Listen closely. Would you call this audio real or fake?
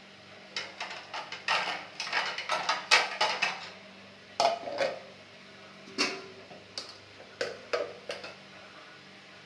real